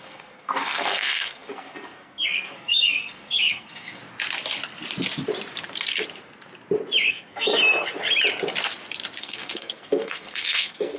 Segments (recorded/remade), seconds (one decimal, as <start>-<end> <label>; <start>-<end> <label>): 0.0-4.0 remade; 4.0-7.1 recorded; 7.1-7.6 remade; 7.6-9.2 recorded; 9.2-11.0 remade